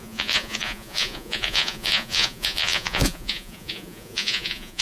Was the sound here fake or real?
fake